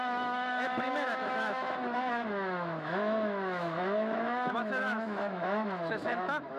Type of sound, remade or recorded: remade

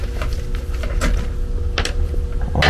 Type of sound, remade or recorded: recorded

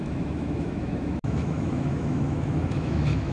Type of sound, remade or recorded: remade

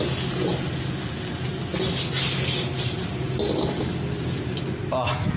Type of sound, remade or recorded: recorded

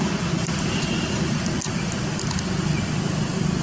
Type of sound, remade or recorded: recorded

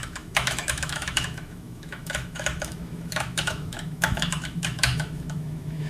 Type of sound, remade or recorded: remade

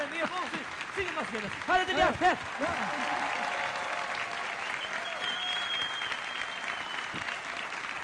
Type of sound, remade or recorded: recorded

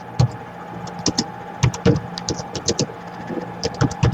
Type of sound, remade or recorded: recorded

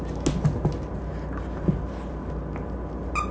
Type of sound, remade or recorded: recorded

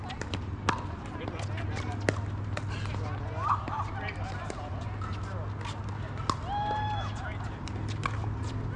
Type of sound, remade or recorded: recorded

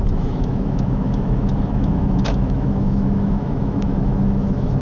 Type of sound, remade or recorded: remade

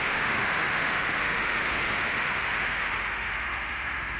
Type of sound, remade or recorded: remade